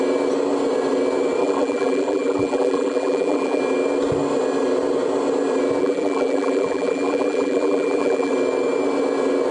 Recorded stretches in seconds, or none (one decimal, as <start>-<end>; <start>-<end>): 0.0-1.4; 3.6-5.8; 8.3-9.5